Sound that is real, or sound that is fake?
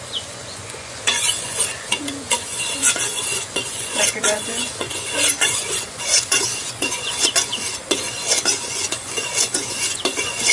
fake